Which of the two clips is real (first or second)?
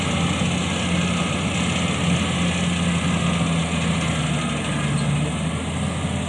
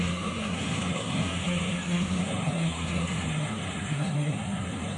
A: first